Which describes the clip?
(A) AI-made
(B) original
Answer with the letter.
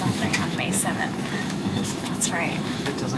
A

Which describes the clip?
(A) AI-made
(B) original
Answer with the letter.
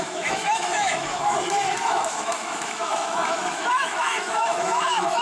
A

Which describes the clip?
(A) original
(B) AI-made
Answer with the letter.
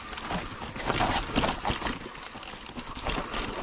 A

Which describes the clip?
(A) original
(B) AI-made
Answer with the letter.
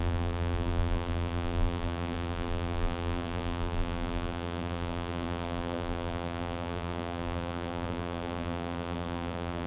B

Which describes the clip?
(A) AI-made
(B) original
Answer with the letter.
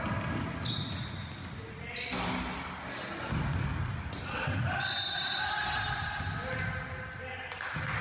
B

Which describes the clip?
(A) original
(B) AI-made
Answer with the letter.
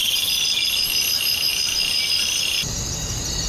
A